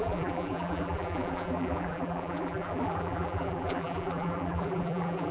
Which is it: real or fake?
fake